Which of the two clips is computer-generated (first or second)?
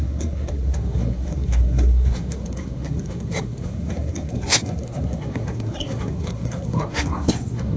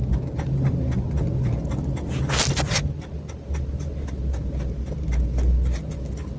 first